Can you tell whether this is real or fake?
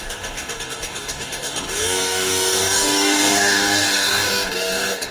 fake